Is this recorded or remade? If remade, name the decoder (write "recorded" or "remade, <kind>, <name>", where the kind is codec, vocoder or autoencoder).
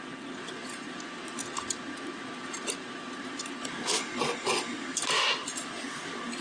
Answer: recorded